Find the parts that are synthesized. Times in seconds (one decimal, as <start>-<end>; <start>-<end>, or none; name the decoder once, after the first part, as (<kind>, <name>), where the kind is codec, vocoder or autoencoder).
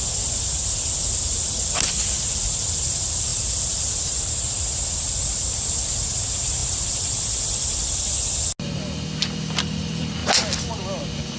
none